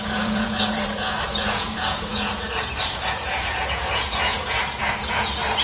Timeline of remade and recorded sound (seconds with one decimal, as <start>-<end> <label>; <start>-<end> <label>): 0.0-5.6 remade